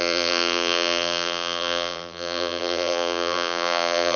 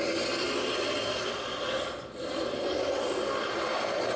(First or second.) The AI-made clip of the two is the first